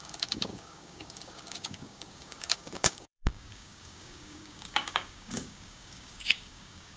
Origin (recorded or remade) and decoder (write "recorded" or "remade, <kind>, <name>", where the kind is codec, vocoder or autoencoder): remade, codec, DAC